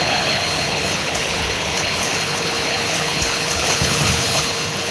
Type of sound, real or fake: fake